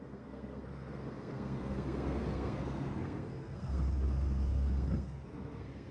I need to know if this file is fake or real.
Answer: fake